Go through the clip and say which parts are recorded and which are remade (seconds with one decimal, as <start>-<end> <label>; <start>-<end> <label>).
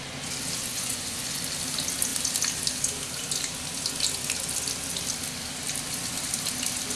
0.0-0.7 recorded; 0.7-1.4 remade; 1.4-7.0 recorded